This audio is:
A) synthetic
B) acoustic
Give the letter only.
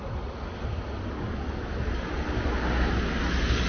B